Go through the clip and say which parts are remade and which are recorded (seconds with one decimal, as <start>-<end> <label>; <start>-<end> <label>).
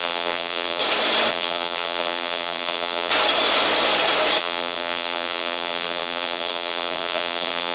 0.0-0.8 remade; 0.8-1.3 recorded; 1.3-3.1 remade; 3.1-4.4 recorded; 4.4-7.7 remade